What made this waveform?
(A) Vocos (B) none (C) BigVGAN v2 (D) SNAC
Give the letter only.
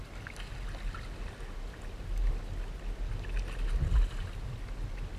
B